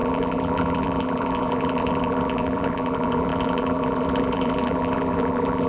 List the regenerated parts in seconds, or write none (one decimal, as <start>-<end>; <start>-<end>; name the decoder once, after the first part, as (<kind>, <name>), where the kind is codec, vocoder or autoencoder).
0.0-5.7 (vocoder, BigVGAN v2)